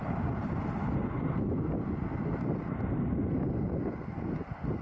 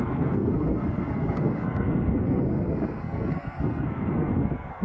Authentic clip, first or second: first